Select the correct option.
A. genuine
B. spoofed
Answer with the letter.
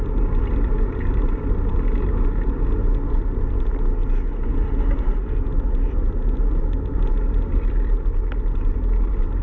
A